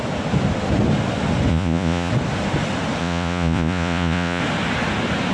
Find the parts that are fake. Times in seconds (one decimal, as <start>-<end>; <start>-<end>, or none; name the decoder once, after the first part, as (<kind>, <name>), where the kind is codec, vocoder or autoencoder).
1.5-2.1 (vocoder, Vocos); 3.0-4.4